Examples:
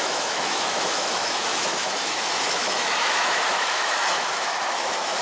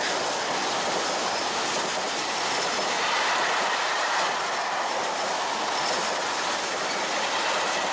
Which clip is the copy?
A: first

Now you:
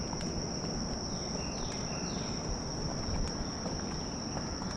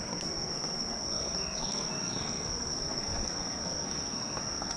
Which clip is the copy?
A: second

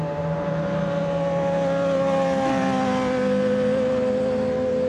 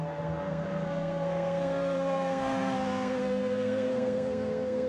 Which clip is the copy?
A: second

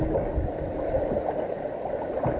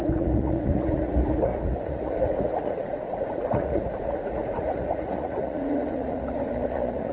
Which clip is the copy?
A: second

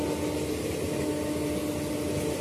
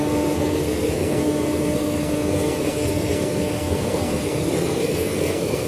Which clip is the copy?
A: second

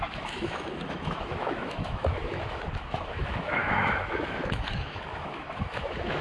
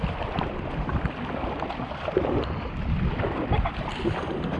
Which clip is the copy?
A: first